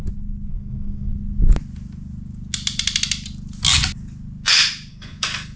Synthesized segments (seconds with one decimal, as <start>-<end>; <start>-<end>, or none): 0.5-1.1; 4.9-5.6